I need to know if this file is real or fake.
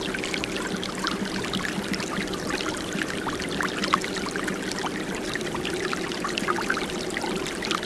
fake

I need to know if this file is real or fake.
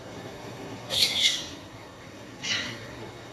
fake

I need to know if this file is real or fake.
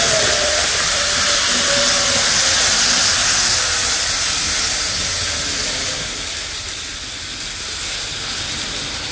real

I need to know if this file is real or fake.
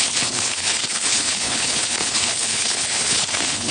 fake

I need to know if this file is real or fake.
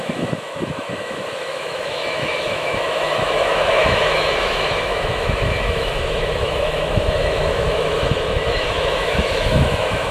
fake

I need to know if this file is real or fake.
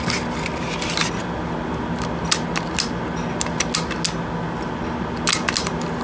real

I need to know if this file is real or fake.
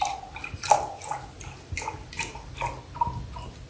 real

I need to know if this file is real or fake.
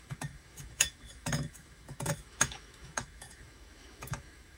fake